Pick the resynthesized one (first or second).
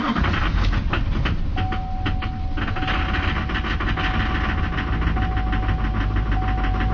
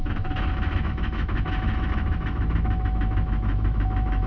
second